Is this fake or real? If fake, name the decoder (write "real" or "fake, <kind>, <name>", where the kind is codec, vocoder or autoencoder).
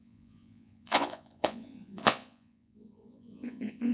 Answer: fake, vocoder, Vocos